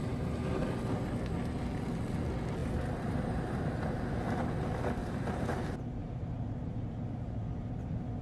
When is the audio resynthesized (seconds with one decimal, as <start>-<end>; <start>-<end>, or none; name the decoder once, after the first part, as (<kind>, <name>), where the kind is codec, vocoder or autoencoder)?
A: 2.6-4.0 (vocoder, BigVGAN v2); 5.0-5.6; 6.0-7.3